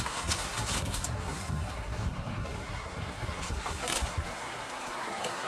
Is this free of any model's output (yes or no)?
no